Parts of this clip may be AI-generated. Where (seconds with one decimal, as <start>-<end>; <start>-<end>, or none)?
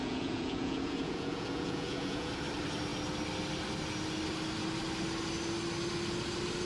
0.0-2.3